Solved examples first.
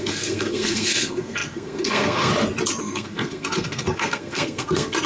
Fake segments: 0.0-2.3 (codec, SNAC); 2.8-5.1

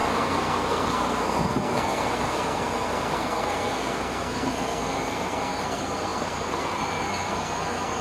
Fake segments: 0.0-8.0 (codec, SNAC)

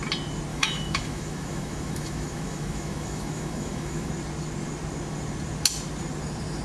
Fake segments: 0.5-4.1 (autoencoder, DAC-VAE)